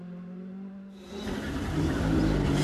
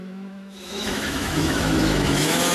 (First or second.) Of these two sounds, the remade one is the second